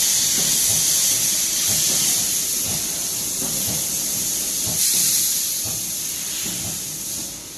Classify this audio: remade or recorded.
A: recorded